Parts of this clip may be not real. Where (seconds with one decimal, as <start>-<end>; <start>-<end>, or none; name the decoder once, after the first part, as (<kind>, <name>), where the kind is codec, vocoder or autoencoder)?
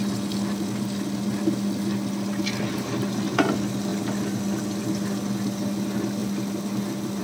none